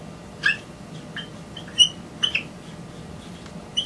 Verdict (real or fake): real